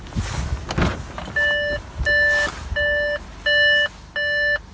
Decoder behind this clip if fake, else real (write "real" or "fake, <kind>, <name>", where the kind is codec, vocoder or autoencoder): real